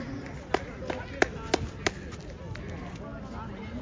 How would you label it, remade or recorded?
recorded